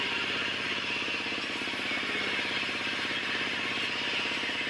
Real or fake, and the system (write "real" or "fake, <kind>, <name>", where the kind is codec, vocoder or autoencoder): real